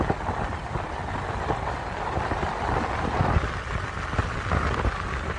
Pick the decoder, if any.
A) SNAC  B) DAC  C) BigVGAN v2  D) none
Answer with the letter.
D